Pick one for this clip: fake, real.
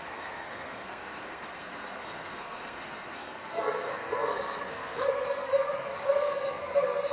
fake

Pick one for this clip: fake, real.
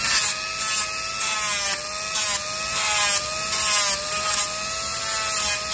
real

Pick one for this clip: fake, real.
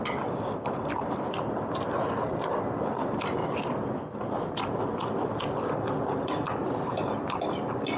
real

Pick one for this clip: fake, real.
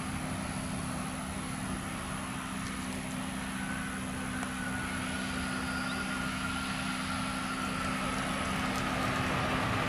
real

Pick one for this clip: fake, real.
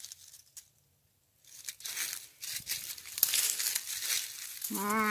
real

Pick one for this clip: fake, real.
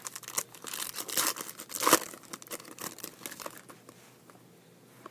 real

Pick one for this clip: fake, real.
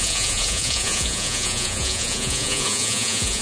fake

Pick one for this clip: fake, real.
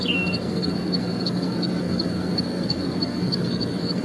fake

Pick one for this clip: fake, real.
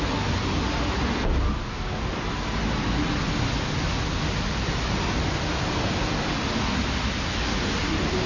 real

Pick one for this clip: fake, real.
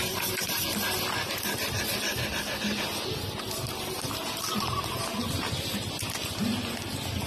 real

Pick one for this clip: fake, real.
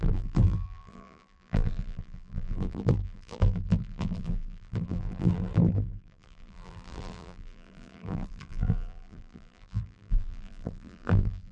fake